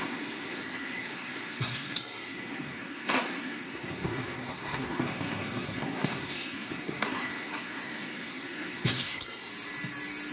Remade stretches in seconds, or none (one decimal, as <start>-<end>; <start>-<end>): 0.0-9.5